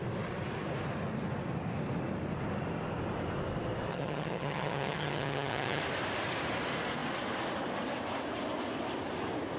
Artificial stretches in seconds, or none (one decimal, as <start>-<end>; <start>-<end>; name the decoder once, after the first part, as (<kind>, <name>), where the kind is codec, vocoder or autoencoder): 3.9-5.8 (vocoder, HiFi-GAN)